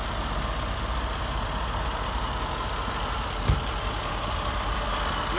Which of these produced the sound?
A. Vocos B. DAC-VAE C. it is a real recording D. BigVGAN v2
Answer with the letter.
C